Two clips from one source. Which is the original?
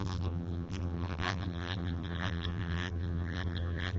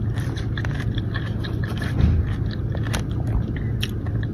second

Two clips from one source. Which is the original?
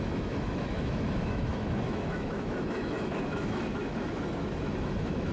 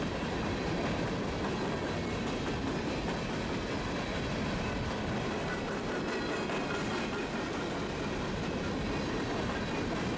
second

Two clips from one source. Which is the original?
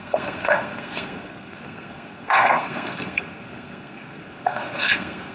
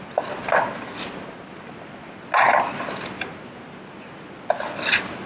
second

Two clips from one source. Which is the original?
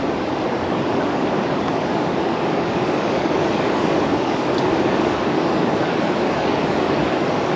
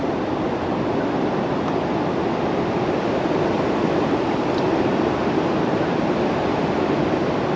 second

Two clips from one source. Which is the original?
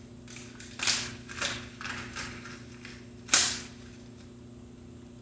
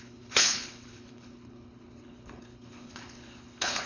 first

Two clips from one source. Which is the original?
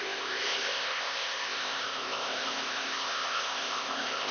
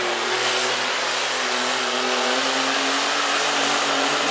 second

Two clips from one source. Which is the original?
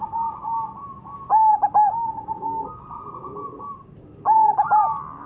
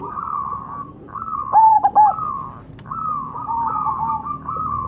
first